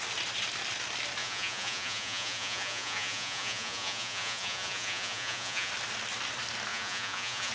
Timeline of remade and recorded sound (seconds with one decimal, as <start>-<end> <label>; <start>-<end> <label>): 0.0-1.2 recorded; 1.2-5.7 remade; 5.7-6.7 recorded; 6.7-7.5 remade